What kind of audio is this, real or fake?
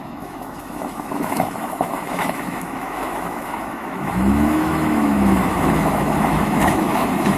fake